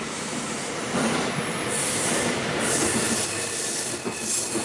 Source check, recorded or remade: recorded